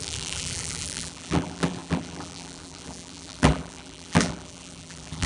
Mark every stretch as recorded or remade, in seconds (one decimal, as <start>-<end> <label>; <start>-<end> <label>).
0.0-5.3 remade